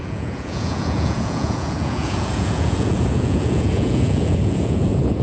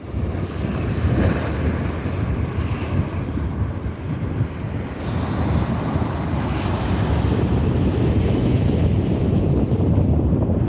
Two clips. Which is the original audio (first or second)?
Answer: second